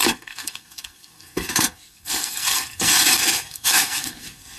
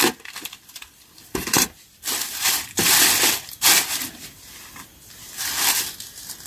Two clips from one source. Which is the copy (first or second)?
first